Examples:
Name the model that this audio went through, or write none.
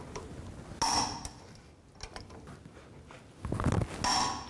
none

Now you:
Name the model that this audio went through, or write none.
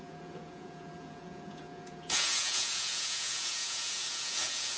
vocoder, Vocos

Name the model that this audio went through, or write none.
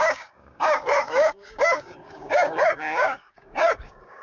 codec, DAC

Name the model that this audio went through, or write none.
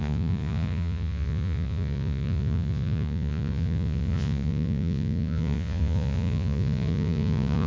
vocoder, Vocos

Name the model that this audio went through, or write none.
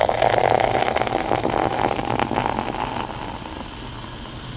none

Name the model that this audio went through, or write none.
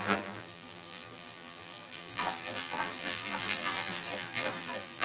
vocoder, BigVGAN v2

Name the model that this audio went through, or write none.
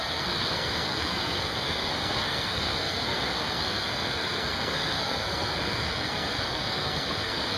codec, SNAC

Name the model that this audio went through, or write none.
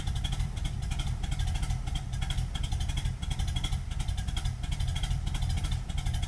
vocoder, BigVGAN v2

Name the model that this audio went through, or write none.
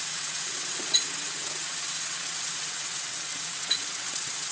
vocoder, WaveNeXt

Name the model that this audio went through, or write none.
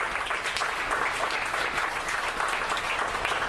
none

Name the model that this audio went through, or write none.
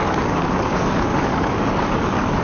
codec, DAC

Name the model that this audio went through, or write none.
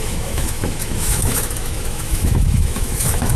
autoencoder, DAC-VAE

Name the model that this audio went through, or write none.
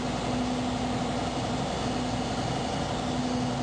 none